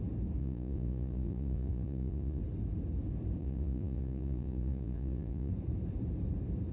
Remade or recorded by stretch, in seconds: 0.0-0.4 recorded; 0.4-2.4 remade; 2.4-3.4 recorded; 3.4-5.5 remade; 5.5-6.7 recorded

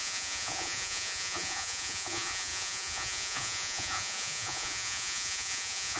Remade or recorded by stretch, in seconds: 0.0-6.0 remade

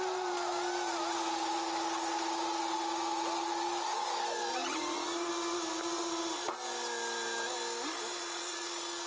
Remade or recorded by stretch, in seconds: 0.0-4.5 recorded; 4.5-5.3 remade; 5.3-8.2 recorded; 8.2-9.1 remade

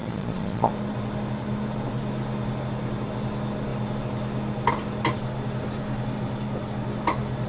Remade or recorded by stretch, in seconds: 0.0-0.7 remade; 0.7-7.5 recorded

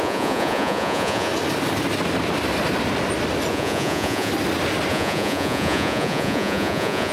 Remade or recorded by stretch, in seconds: 0.0-1.3 remade; 1.3-3.5 recorded; 3.5-4.3 remade; 4.3-4.9 recorded; 4.9-7.1 remade